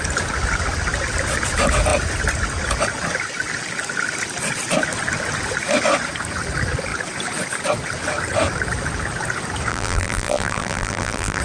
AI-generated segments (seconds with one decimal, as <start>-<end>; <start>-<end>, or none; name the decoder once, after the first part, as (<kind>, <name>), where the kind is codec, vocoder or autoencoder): 9.7-11.4 (vocoder, BigVGAN v2)